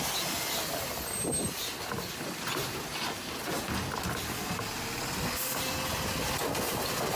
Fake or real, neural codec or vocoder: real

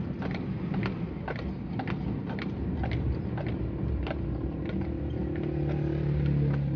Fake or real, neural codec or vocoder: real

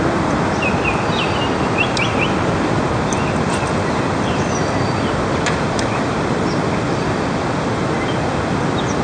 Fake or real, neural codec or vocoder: real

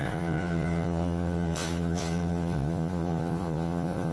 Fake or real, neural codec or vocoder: fake, vocoder, Vocos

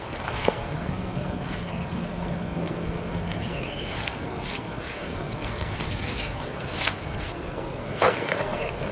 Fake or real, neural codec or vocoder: fake, codec, SNAC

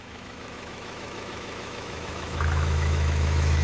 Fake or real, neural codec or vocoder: fake, autoencoder, DAC-VAE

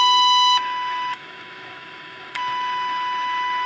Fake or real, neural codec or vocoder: fake, autoencoder, DAC-VAE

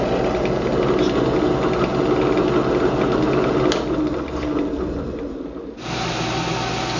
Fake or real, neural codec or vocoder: real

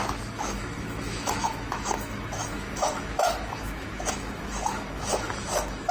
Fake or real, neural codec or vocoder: fake, autoencoder, DAC-VAE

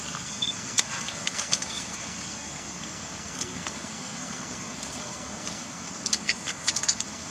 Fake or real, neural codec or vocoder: fake, codec, SNAC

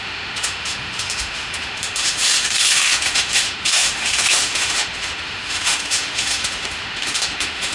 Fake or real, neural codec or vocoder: fake, autoencoder, DAC-VAE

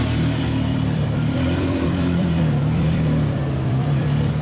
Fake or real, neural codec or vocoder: fake, vocoder, BigVGAN v2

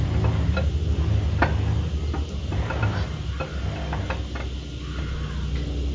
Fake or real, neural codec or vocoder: real